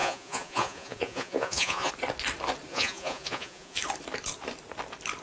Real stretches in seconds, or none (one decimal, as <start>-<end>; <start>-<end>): 1.9-2.7; 3.8-5.2

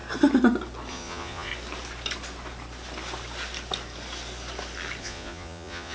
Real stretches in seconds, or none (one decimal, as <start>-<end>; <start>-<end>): 0.0-0.9; 1.5-5.0

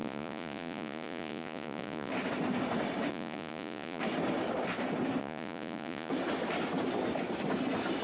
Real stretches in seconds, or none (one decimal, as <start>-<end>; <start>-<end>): 2.1-3.1; 4.0-5.2; 6.1-8.0

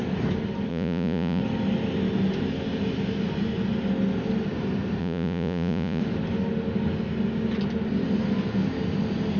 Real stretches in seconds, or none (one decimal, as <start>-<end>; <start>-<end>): 0.0-0.7; 1.4-5.0; 6.0-9.4

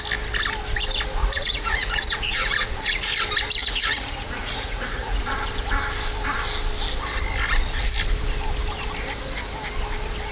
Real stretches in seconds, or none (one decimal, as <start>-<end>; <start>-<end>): 0.0-1.2; 3.1-3.6; 5.2-10.3

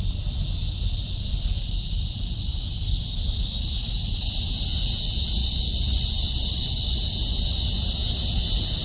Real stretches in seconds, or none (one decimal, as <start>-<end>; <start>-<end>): 0.0-5.4; 7.0-8.8

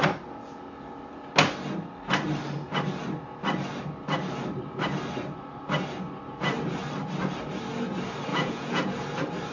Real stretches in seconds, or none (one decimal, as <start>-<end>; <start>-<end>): 0.0-8.3; 8.9-9.5

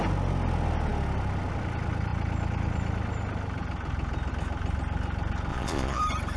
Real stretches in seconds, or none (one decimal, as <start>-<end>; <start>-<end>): 0.0-5.5; 6.0-6.4